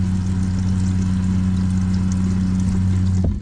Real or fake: real